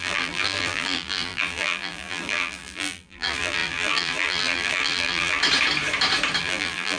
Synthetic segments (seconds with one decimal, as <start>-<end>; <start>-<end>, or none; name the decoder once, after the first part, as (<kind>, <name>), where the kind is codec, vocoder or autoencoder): 0.0-5.4 (vocoder, BigVGAN v2); 6.4-7.0